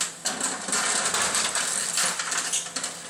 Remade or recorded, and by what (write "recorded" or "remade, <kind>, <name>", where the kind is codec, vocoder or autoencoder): recorded